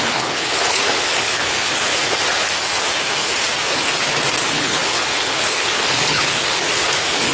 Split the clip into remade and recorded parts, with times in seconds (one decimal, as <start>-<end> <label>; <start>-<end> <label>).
0.0-1.9 remade; 1.9-4.4 recorded; 4.4-7.3 remade